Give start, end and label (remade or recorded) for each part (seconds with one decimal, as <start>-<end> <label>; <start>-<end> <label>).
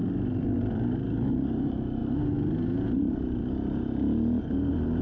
0.0-5.0 recorded